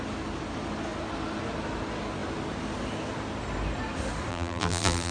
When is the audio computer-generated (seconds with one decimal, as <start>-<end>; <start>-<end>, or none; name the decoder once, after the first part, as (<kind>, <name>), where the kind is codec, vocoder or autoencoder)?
4.3-5.1 (vocoder, BigVGAN v2)